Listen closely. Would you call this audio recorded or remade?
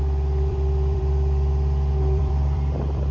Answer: remade